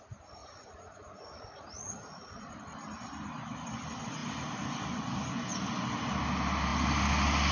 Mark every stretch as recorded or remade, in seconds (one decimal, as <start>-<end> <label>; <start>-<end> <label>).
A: 0.0-0.4 recorded; 0.4-2.6 remade; 2.6-7.5 recorded